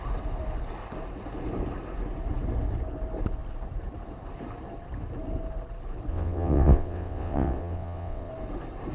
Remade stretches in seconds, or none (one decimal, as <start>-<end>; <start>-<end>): 6.1-8.3